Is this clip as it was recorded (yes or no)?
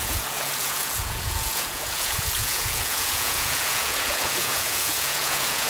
no